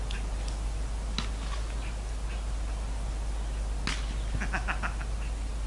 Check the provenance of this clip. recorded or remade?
recorded